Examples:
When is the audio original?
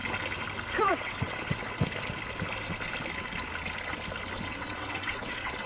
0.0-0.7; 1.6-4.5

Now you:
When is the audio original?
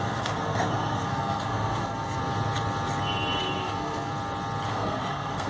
2.2-3.6; 4.1-4.7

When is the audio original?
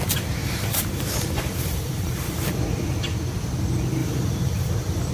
0.0-0.4; 2.6-4.0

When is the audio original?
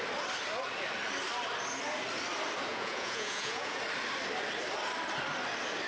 0.0-2.7; 3.8-5.9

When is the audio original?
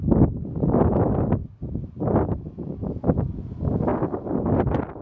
0.0-5.0